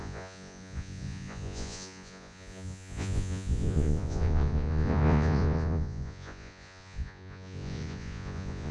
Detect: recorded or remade remade